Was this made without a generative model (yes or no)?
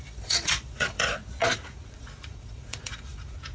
no